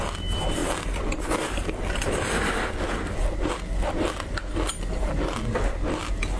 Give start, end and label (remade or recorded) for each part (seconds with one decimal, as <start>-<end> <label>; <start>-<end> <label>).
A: 0.0-6.4 recorded